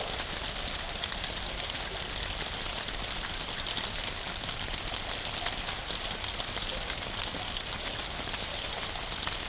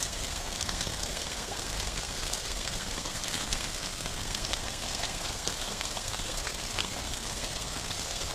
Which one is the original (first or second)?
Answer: first